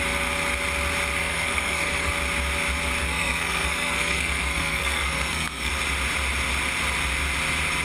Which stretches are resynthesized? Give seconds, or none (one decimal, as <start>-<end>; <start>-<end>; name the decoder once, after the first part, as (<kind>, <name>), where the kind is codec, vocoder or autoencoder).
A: 1.2-2.1 (codec, SNAC); 3.0-5.7